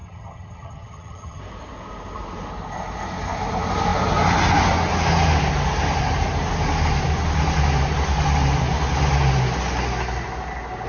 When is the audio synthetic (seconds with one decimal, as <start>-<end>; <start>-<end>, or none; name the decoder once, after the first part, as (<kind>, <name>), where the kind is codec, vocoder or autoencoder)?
0.0-1.4 (vocoder, HiFi-GAN)

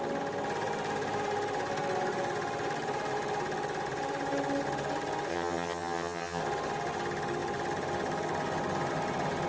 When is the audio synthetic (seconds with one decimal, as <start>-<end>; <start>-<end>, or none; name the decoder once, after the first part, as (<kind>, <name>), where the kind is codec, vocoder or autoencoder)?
5.3-6.4 (vocoder, HiFi-GAN)

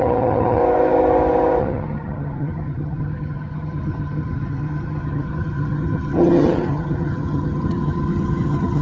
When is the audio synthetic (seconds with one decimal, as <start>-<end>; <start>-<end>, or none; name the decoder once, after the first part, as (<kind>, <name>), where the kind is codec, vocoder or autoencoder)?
0.0-0.6 (vocoder, HiFi-GAN); 1.6-8.8

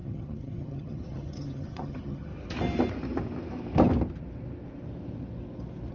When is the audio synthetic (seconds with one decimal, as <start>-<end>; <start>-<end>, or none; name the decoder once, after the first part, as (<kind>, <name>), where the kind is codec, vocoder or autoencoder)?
0.0-2.3 (vocoder, HiFi-GAN)

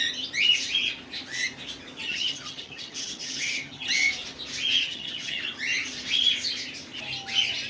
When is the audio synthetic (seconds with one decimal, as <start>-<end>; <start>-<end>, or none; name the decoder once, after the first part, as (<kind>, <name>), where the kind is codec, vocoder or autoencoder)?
2.1-3.9 (vocoder, HiFi-GAN); 4.8-5.4

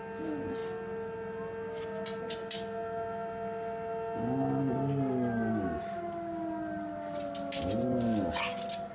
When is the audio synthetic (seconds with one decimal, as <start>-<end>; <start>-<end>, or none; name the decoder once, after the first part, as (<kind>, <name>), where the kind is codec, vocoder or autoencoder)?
none